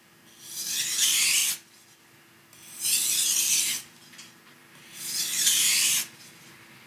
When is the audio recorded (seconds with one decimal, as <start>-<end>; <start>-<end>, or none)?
0.0-6.9